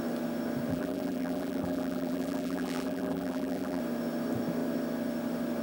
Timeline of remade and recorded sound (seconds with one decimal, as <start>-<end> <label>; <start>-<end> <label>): 0.0-0.7 recorded; 0.7-3.8 remade; 3.8-5.6 recorded